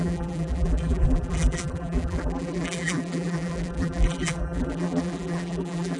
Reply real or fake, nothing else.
fake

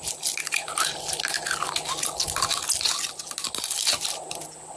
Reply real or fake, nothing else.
real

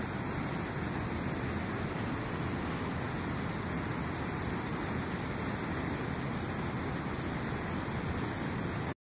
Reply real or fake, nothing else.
real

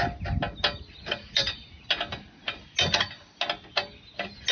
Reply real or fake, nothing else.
real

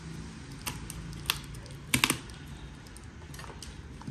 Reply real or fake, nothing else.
real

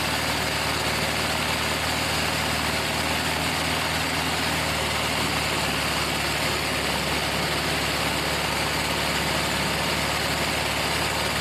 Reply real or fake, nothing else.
real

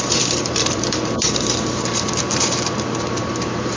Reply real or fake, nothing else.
fake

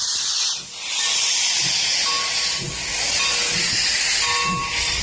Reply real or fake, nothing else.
real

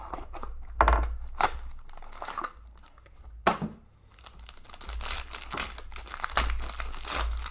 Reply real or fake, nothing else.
real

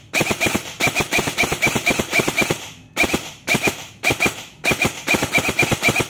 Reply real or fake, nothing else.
fake